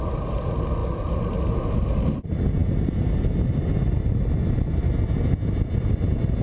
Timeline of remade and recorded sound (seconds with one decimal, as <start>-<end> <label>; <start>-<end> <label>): 0.0-0.8 recorded; 0.8-1.4 remade; 1.4-6.4 recorded